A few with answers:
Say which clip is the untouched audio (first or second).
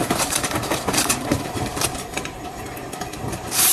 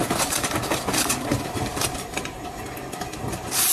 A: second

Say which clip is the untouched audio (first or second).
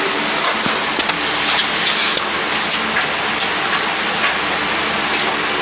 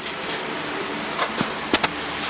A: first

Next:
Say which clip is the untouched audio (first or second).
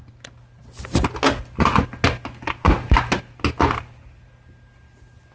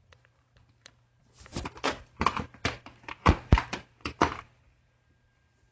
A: first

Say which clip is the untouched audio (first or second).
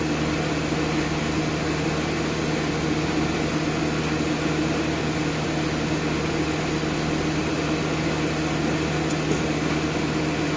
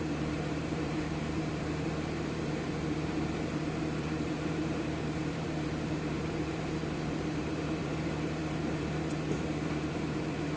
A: first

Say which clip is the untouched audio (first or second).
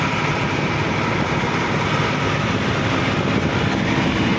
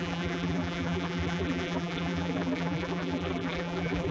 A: first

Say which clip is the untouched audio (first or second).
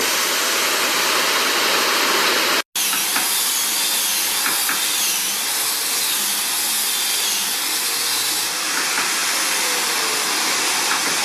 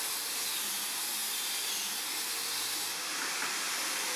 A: first